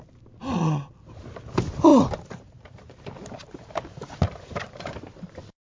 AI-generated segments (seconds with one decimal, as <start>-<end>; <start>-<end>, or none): 1.9-5.3